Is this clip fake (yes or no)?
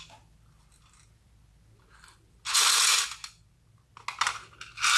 no